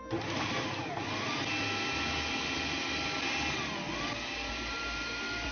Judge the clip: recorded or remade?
recorded